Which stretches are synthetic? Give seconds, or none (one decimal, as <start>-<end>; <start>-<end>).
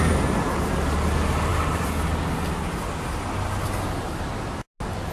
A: none